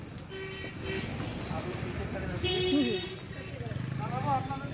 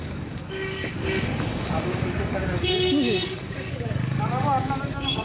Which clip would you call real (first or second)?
first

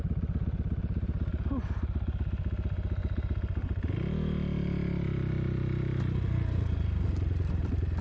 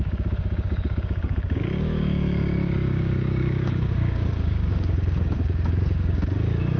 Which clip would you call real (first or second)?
first